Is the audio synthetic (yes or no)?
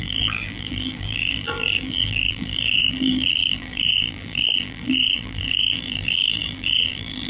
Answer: yes